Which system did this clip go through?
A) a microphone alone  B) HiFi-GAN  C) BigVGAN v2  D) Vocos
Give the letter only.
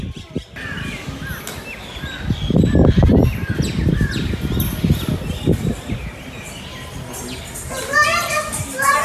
A